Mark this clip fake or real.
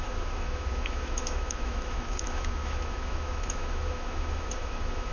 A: fake